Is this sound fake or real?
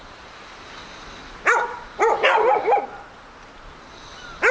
real